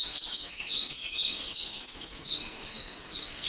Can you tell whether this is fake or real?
fake